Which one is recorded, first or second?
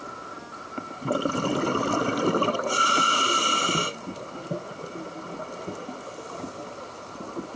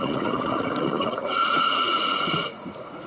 first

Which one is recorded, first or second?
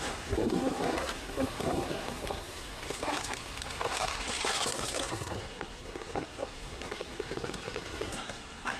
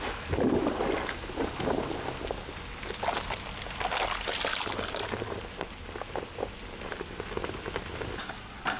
second